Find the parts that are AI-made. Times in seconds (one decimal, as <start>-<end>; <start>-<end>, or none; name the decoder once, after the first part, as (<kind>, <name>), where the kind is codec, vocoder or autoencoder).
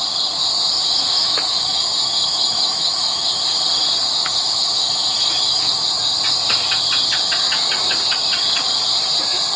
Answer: 1.2-3.3 (autoencoder, DAC-VAE); 4.2-5.9